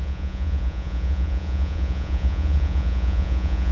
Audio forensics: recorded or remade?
remade